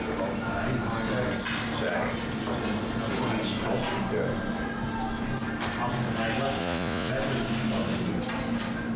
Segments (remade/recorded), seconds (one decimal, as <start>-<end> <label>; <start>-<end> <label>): 0.0-6.6 recorded; 6.6-7.1 remade; 7.1-9.0 recorded